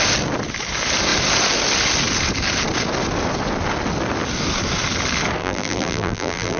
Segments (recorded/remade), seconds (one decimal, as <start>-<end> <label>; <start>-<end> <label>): 0.0-5.4 recorded; 5.4-6.6 remade

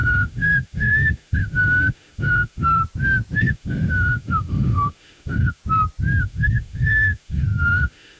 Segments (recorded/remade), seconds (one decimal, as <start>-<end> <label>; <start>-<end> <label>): 0.0-2.8 remade; 2.8-3.4 recorded; 3.4-5.6 remade; 5.6-6.2 recorded; 6.2-8.2 remade

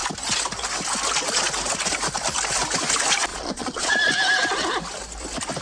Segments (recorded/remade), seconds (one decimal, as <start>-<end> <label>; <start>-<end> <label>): 0.0-3.3 recorded; 3.3-4.1 remade; 4.1-5.6 recorded